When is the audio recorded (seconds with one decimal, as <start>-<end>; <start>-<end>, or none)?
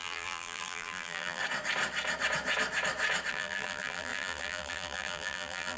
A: 1.4-3.3